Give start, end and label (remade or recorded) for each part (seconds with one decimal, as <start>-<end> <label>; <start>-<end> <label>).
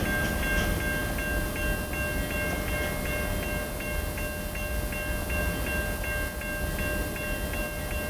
0.0-8.1 recorded